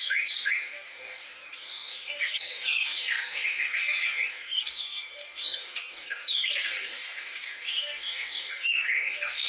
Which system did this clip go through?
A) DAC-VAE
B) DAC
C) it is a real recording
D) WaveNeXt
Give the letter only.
B